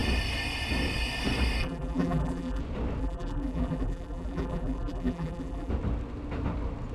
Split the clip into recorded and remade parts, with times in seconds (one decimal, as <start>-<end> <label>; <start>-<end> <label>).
0.0-1.6 recorded; 1.6-2.6 remade; 2.6-3.0 recorded; 3.0-5.7 remade; 5.7-6.9 recorded